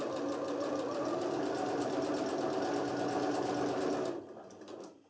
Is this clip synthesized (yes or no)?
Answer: no